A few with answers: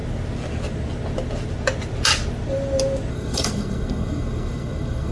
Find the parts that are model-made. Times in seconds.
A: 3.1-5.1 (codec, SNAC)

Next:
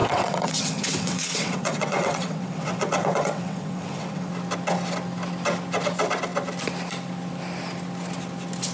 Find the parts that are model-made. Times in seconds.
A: 0.0-4.3 (vocoder, WaveNeXt)

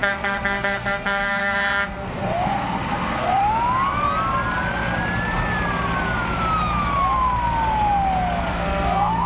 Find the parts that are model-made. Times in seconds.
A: 0.0-3.4 (codec, SNAC); 8.5-9.3

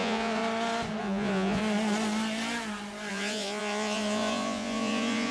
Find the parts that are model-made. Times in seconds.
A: 0.0-0.4 (vocoder, Vocos); 1.0-1.6; 3.1-5.3

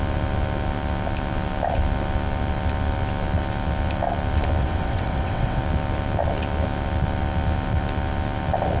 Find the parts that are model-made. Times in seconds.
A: 4.6-5.6 (vocoder, WaveNeXt)